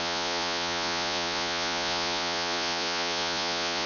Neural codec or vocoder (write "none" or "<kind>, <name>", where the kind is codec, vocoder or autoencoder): vocoder, Vocos